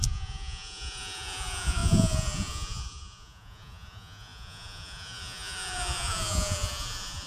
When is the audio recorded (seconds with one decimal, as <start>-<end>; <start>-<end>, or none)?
none